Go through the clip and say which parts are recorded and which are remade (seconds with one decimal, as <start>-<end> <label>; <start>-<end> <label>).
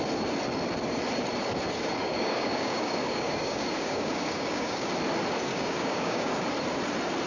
0.0-2.0 recorded; 2.0-4.9 remade; 4.9-5.5 recorded; 5.5-6.3 remade; 6.3-7.3 recorded